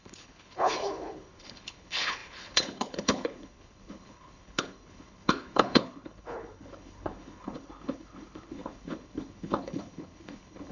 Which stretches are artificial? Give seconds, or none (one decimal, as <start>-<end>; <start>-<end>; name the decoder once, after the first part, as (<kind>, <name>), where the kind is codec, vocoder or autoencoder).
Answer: 0.0-10.7 (codec, HILCodec)